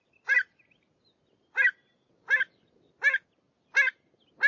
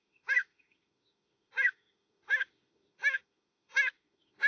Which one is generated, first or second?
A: second